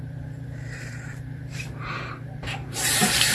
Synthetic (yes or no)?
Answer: yes